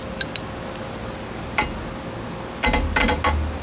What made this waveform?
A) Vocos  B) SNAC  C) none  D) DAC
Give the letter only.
C